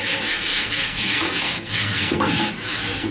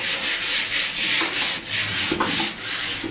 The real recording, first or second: second